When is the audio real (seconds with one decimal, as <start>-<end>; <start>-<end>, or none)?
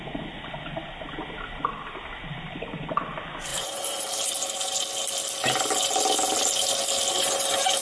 0.0-2.2; 3.1-3.5; 4.2-7.8